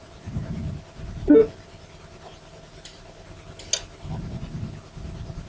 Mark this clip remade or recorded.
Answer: recorded